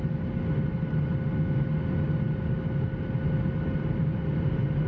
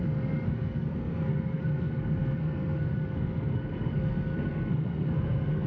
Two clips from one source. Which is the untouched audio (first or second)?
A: first